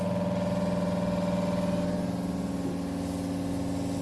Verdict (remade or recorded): recorded